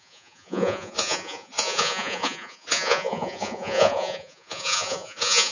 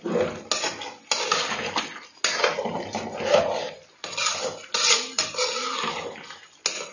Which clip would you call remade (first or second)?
first